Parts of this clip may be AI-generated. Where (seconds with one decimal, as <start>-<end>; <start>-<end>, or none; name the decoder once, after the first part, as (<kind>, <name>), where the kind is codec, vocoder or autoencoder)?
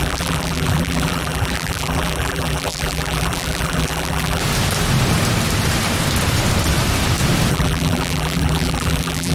0.0-4.4 (vocoder, BigVGAN v2); 7.5-9.3